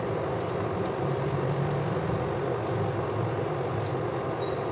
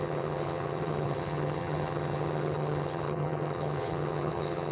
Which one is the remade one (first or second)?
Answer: second